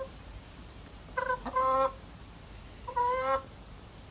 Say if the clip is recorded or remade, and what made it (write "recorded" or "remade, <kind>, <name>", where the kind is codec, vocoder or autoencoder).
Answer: recorded